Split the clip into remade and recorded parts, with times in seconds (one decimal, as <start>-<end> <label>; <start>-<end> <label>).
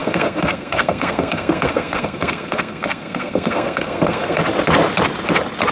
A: 0.0-4.4 remade; 4.4-5.7 recorded